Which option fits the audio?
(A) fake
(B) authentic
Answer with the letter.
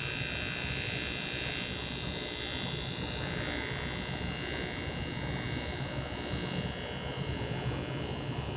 B